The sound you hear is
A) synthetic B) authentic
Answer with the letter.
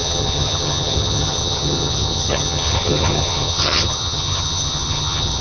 A